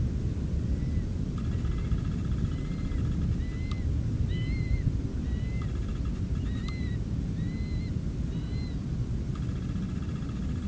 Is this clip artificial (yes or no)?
no